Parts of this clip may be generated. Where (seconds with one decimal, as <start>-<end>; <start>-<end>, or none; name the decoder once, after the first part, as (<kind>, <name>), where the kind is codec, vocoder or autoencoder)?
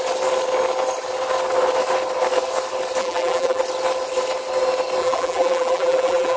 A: 3.0-3.6 (vocoder, BigVGAN v2); 5.0-6.4